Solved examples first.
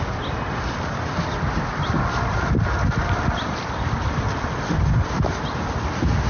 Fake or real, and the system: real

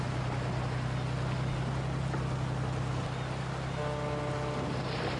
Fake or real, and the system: real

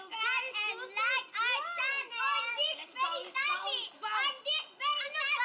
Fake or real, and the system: real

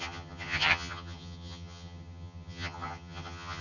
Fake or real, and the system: fake, vocoder, HiFi-GAN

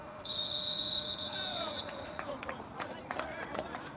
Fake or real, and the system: fake, vocoder, Vocos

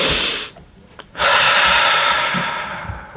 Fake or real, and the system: fake, vocoder, BigVGAN v2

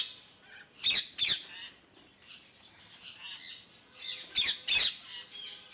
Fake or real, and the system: real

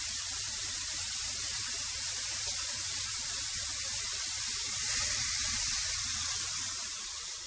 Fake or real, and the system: real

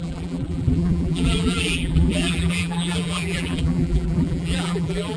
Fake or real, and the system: fake, vocoder, BigVGAN v2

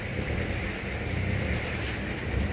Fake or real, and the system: fake, vocoder, BigVGAN v2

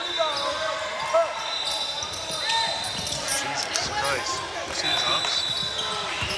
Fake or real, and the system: real